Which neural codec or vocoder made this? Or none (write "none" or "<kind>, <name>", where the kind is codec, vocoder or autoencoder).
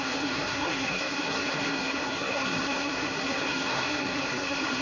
codec, SNAC